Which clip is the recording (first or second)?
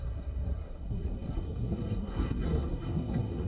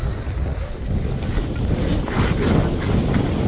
second